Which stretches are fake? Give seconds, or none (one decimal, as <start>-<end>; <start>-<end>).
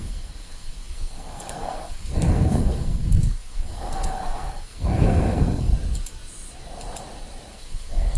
0.0-5.7; 7.5-8.2